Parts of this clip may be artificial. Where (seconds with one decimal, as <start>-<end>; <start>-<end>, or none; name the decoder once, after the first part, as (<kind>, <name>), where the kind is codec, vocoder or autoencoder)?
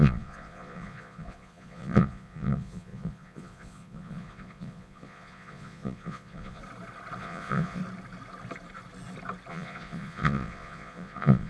0.0-6.6 (vocoder, Vocos); 7.2-7.8; 9.5-11.5